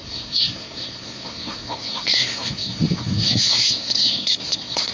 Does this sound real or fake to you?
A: fake